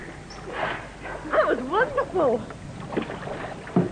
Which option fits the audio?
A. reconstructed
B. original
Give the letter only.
B